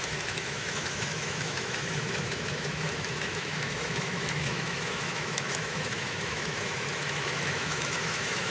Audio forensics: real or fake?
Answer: fake